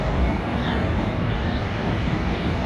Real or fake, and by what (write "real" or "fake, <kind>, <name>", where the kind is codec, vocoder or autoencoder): fake, codec, DAC